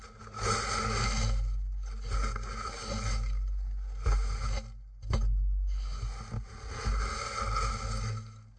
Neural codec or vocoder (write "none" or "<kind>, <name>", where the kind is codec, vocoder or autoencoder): none